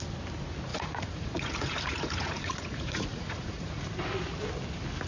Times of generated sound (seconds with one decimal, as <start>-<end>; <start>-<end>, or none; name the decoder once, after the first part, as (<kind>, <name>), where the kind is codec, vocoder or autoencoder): 0.7-3.8 (vocoder, Vocos)